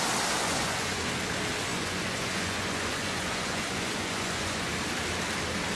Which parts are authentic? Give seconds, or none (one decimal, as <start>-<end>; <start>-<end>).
0.0-0.4; 1.0-1.7; 4.7-5.8